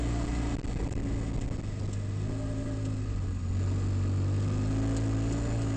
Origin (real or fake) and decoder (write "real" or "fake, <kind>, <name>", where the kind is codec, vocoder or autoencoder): real